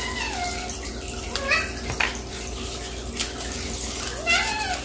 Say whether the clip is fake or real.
real